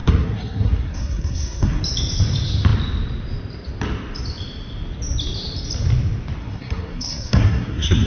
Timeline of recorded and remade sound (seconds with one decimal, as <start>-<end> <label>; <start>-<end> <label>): 0.0-1.8 remade; 1.8-6.4 recorded; 6.4-8.1 remade